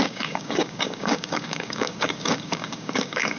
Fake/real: fake